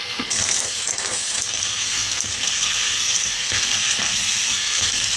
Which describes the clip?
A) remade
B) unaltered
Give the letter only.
A